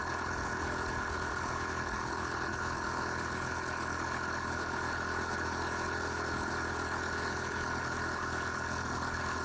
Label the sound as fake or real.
fake